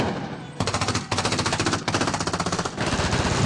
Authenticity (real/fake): real